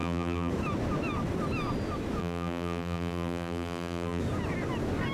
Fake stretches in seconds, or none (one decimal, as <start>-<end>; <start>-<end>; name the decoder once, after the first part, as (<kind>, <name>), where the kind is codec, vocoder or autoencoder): 0.0-0.5 (vocoder, BigVGAN v2); 2.2-4.2